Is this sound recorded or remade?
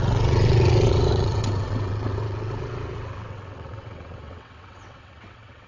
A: remade